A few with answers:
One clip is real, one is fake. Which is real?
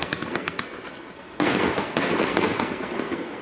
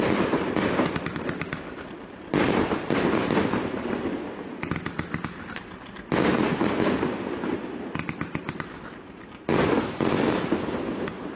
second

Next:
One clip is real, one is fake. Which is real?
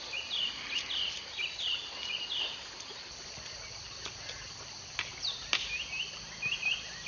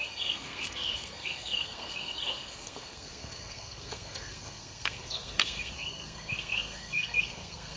first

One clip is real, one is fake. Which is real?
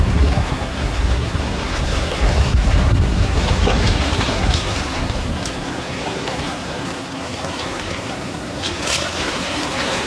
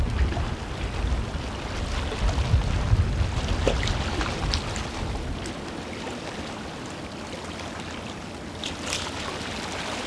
second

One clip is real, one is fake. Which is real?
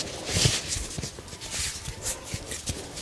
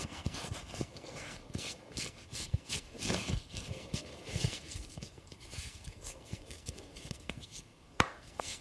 first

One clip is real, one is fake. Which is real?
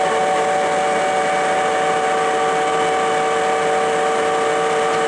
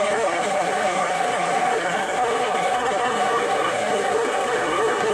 first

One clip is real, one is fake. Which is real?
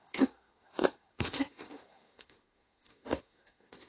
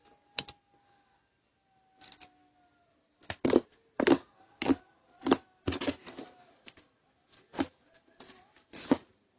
second